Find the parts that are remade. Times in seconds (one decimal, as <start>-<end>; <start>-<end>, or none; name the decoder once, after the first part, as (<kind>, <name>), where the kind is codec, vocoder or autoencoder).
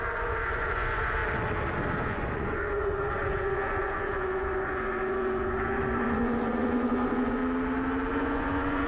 0.0-1.2 (vocoder, Vocos); 2.0-7.4; 8.1-8.9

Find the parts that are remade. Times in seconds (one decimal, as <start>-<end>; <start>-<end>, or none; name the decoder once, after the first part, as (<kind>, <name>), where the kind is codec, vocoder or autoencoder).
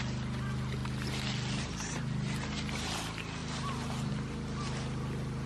none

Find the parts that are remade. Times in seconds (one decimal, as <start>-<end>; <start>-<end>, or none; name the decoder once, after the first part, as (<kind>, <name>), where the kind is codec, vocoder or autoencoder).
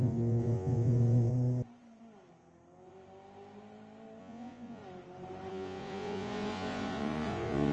0.0-1.3 (vocoder, Vocos); 4.2-4.8; 5.5-7.7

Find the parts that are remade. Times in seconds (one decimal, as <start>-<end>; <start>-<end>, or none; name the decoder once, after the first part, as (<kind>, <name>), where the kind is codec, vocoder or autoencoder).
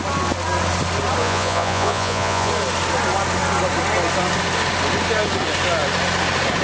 1.2-2.5 (vocoder, Vocos)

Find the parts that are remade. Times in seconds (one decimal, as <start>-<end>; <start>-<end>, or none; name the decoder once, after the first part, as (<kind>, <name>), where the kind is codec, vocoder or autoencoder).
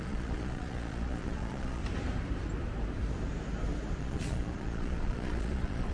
0.0-1.8 (vocoder, Vocos); 4.0-5.9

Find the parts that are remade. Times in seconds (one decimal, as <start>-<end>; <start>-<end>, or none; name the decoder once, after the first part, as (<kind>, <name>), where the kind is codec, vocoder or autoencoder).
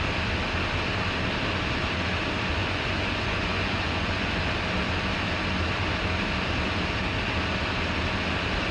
2.6-4.4 (vocoder, Vocos)